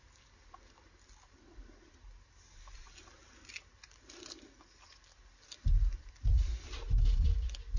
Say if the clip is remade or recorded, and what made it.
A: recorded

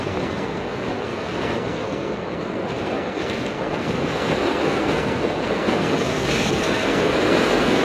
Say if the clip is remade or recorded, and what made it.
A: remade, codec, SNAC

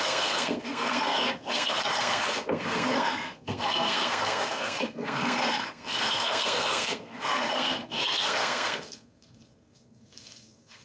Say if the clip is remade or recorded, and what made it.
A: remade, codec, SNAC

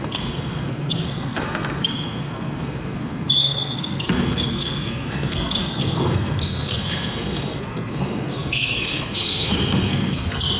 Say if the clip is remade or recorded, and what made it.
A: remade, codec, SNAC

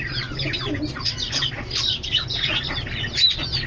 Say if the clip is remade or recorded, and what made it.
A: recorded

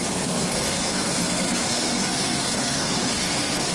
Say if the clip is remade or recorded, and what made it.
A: remade, codec, SNAC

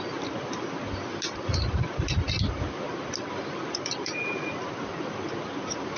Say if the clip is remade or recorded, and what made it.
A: recorded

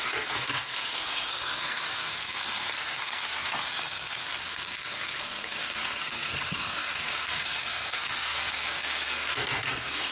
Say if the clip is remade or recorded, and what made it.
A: remade, codec, SNAC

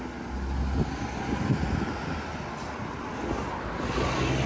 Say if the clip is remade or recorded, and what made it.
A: recorded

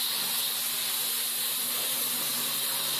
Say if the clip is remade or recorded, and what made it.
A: recorded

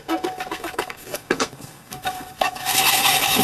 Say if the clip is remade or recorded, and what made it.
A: remade, codec, SNAC